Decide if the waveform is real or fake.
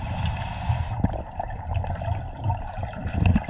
real